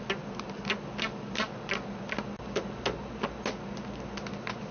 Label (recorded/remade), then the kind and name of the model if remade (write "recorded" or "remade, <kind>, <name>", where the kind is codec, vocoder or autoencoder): recorded